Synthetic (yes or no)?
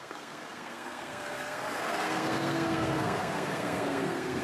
yes